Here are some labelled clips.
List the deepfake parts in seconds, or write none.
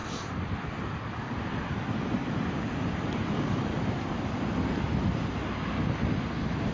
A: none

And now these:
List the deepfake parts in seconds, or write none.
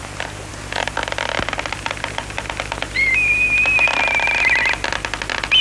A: none